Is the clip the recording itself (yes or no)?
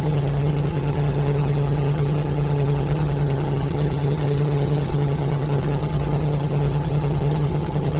no